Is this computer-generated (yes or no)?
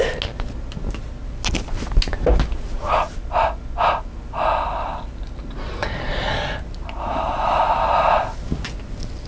no